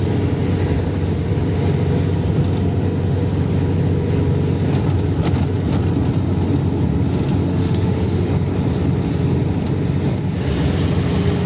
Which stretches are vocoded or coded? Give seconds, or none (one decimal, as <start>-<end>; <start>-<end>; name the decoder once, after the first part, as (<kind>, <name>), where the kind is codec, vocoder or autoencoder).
7.5-8.3 (autoencoder, DAC-VAE)